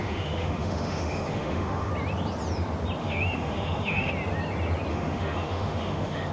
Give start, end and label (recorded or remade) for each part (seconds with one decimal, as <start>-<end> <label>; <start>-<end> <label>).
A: 0.0-1.9 remade; 1.9-3.0 recorded; 3.0-4.1 remade; 4.1-4.9 recorded; 4.9-6.3 remade